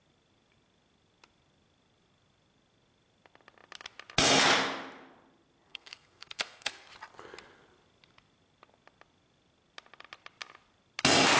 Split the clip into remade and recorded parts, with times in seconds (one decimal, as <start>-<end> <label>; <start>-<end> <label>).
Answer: 0.0-5.7 recorded; 5.7-6.9 remade; 6.9-11.4 recorded